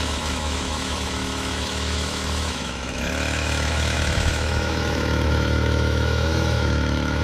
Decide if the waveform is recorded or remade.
remade